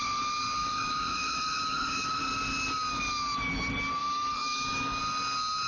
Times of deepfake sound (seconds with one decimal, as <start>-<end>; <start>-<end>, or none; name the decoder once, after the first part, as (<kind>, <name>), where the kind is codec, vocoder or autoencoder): 0.6-2.2 (autoencoder, DAC-VAE); 4.0-5.0